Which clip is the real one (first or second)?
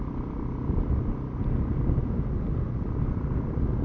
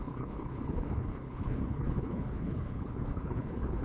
first